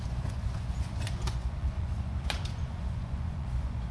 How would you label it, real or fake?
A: fake